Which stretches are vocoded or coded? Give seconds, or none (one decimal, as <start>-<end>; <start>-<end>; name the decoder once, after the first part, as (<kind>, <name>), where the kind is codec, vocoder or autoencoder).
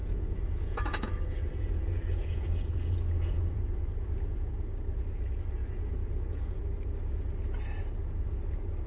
0.0-4.5 (vocoder, Vocos); 5.6-6.6